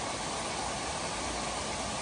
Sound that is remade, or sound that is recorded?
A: recorded